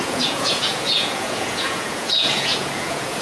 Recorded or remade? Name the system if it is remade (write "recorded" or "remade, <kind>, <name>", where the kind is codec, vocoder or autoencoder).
remade, vocoder, Vocos